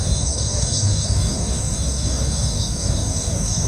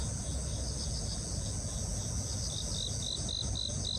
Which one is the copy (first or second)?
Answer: first